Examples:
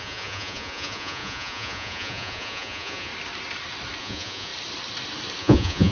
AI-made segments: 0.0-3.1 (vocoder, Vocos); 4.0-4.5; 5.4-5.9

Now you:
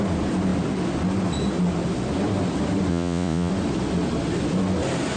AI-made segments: 2.9-3.5 (vocoder, Vocos)

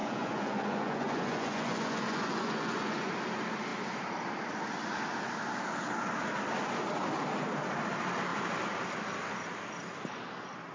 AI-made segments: 0.0-3.1 (vocoder, Vocos)

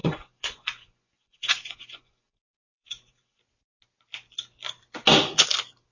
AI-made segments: 0.0-3.4 (vocoder, Vocos)

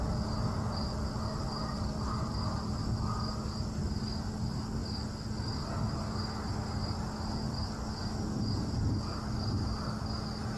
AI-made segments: none

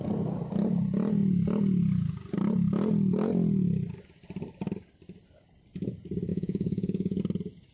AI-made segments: 6.3-7.2 (vocoder, Vocos)